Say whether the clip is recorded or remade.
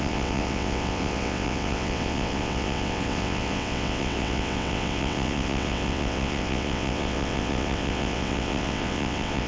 remade